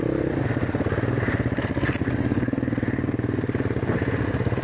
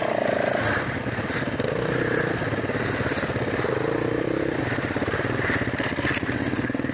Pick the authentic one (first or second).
first